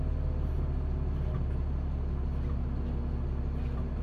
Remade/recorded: recorded